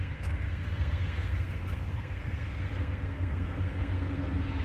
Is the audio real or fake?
fake